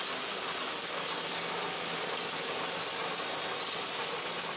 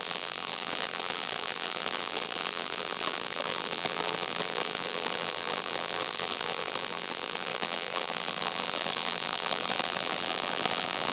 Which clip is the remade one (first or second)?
second